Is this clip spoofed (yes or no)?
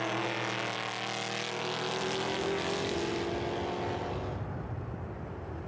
no